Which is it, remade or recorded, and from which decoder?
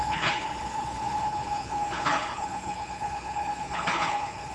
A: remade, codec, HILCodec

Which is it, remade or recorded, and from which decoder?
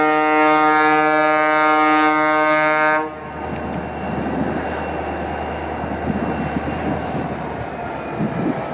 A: recorded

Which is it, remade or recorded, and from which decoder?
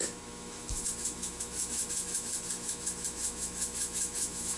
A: remade, autoencoder, DAC-VAE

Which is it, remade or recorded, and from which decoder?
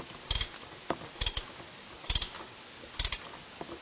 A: recorded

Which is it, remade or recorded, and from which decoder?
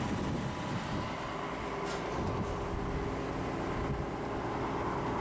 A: recorded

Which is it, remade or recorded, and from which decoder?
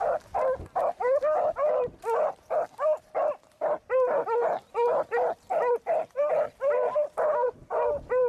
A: recorded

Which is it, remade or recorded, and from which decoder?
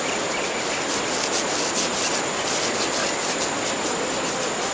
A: recorded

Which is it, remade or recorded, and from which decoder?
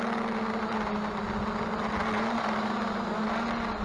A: recorded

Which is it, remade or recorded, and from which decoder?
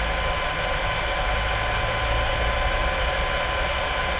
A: recorded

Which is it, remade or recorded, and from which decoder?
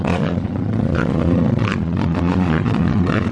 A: remade, vocoder, Vocos